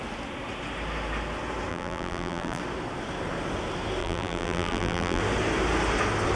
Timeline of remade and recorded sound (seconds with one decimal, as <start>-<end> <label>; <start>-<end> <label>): 0.0-1.7 recorded; 1.7-2.6 remade; 2.6-4.0 recorded; 4.0-5.2 remade; 5.2-6.4 recorded